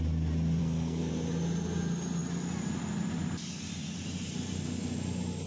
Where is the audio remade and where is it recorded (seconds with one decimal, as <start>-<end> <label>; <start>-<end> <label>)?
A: 0.0-0.6 recorded; 0.6-1.1 remade; 1.1-5.5 recorded